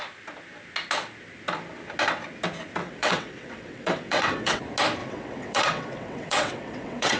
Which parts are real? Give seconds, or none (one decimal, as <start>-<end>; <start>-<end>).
0.0-2.8; 4.6-5.0